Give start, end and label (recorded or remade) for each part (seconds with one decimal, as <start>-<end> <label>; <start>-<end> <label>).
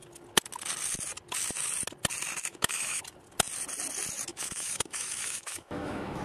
0.0-2.5 recorded; 2.5-3.0 remade; 3.0-4.3 recorded; 4.3-6.2 remade